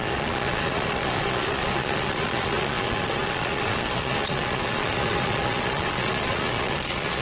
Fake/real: fake